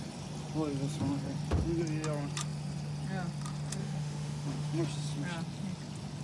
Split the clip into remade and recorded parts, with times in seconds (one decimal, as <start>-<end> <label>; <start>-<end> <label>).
0.0-3.8 recorded; 3.8-4.8 remade; 4.8-6.2 recorded